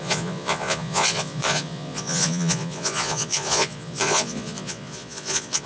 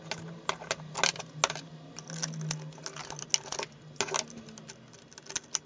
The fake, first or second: first